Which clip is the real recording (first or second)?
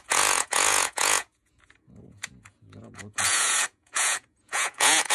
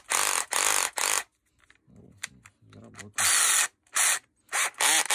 second